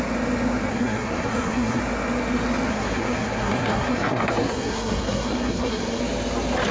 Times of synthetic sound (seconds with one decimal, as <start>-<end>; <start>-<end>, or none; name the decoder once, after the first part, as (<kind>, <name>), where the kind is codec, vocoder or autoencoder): 0.7-1.8 (codec, SNAC); 2.7-6.0

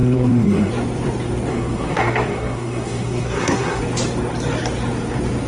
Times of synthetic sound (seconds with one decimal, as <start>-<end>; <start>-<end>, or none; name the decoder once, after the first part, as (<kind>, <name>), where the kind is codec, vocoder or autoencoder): 0.0-0.7 (codec, SNAC); 1.5-3.8

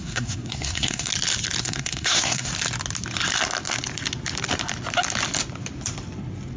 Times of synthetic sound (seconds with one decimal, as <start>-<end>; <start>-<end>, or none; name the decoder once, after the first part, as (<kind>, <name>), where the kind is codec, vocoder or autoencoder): 0.0-1.1 (codec, SNAC); 1.6-2.5

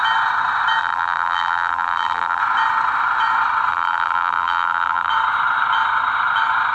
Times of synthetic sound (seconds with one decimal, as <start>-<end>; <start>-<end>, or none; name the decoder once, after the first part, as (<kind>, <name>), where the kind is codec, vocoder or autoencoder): 0.8-2.4 (vocoder, BigVGAN v2); 3.7-5.1

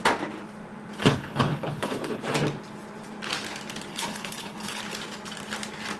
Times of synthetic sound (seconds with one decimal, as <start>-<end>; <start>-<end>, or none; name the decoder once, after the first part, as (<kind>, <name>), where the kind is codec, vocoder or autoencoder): 1.0-2.2 (codec, HILCodec); 3.9-4.8

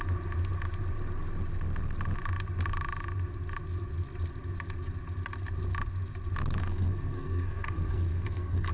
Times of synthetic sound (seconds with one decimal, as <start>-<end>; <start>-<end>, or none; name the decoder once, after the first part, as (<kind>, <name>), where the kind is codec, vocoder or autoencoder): 6.6-8.7 (codec, SNAC)

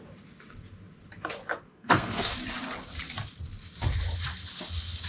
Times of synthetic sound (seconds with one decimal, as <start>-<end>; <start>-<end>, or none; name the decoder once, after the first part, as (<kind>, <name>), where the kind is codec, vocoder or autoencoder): 1.7-2.3 (codec, SNAC)

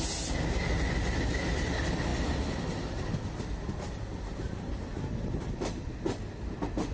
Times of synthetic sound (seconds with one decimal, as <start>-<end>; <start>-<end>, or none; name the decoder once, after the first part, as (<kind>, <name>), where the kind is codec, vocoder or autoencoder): none